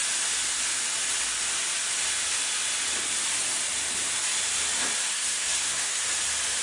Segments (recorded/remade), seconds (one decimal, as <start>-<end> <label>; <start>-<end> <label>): 0.0-5.1 recorded; 5.1-6.0 remade; 6.0-6.6 recorded